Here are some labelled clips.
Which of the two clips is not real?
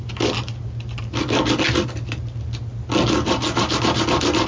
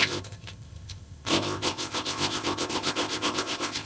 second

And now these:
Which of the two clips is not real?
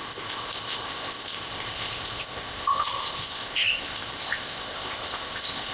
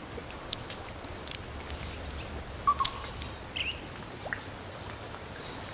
first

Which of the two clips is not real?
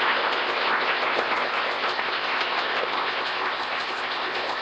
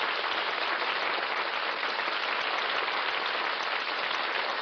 first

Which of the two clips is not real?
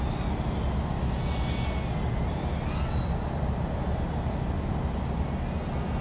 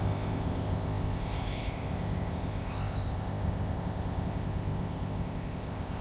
second